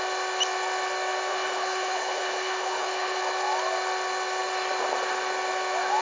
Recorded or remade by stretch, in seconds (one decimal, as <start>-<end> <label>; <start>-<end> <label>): 0.0-1.3 recorded; 1.3-3.2 remade; 3.2-6.0 recorded